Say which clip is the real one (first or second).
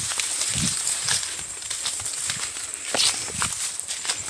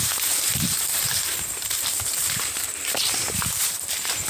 first